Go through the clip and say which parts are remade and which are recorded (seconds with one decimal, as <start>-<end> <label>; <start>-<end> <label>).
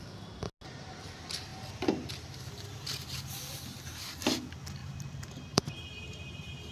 0.0-4.8 recorded; 4.8-6.7 remade